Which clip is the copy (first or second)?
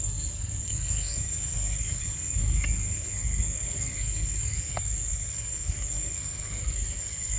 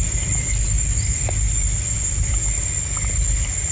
first